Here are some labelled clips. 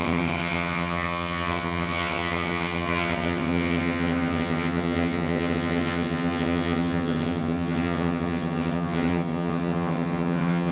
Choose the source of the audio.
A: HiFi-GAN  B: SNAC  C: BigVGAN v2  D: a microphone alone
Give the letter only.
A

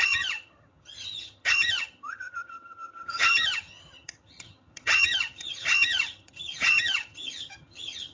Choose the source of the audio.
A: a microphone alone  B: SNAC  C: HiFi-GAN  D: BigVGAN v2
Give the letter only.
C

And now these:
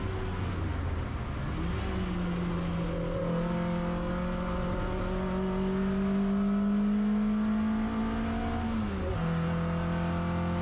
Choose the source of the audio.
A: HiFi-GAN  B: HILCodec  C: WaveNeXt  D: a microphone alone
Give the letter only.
D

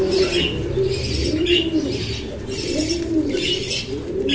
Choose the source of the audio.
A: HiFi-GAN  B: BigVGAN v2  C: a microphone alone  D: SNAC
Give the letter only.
C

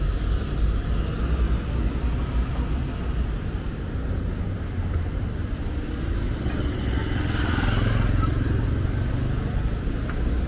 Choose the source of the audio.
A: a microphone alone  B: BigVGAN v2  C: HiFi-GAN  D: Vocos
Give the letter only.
A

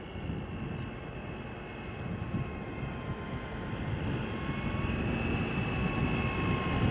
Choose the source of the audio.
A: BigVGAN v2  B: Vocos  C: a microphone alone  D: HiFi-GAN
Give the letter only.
C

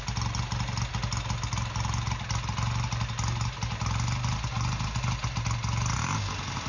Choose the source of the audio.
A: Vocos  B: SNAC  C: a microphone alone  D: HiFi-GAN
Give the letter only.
C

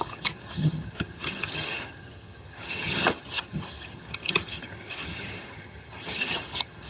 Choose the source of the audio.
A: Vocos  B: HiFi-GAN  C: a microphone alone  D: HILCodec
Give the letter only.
B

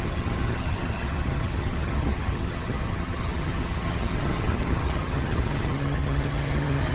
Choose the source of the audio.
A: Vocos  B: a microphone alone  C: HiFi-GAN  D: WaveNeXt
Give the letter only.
C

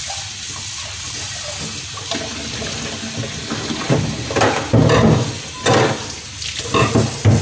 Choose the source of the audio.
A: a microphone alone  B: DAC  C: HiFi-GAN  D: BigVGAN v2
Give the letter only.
A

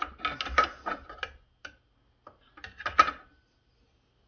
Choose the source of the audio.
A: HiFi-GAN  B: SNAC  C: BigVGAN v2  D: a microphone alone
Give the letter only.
D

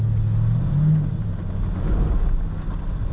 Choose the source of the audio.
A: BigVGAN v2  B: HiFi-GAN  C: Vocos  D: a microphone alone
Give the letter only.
D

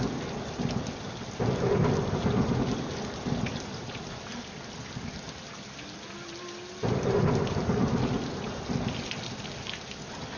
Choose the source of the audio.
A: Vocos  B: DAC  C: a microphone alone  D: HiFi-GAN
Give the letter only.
C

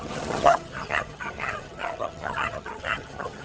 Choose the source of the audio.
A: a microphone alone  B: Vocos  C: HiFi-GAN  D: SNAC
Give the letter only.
C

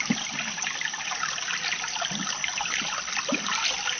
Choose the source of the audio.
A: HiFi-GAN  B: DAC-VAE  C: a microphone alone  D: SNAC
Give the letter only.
C